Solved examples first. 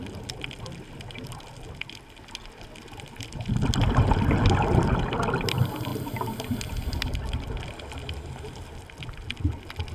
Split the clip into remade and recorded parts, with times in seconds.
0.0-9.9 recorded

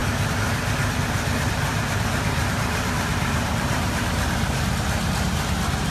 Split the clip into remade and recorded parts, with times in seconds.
0.0-1.7 recorded; 1.7-4.6 remade; 4.6-5.9 recorded

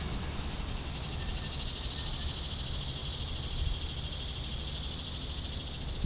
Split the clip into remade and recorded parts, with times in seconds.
0.0-3.0 recorded; 3.0-6.1 remade

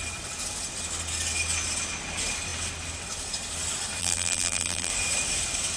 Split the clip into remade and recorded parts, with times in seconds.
0.0-4.0 recorded; 4.0-4.9 remade; 4.9-5.8 recorded

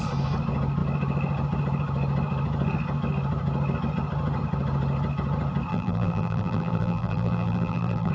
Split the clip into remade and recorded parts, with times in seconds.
0.0-5.7 recorded; 5.7-8.1 remade

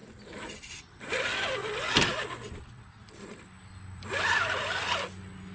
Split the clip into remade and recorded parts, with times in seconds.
0.0-1.6 recorded; 1.6-4.9 remade; 4.9-5.5 recorded

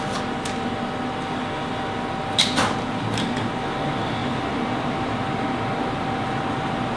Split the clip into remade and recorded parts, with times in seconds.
0.0-7.0 recorded